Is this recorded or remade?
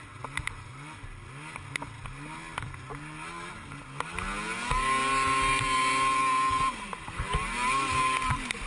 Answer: recorded